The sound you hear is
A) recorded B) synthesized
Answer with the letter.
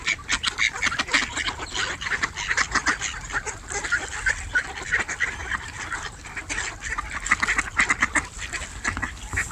A